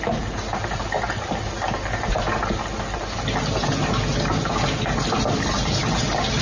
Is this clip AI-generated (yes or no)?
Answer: no